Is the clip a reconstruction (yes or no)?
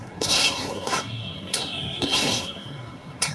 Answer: yes